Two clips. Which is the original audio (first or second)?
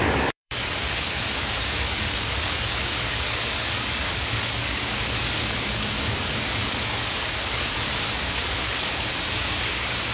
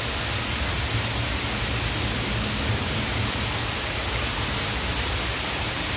second